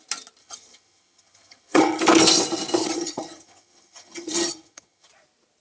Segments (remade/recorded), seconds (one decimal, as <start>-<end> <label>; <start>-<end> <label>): 0.0-0.4 recorded; 0.4-2.0 remade; 2.0-2.8 recorded; 2.8-5.1 remade; 5.1-5.6 recorded